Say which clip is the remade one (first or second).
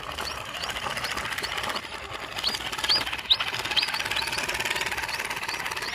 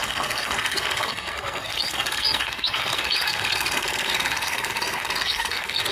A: second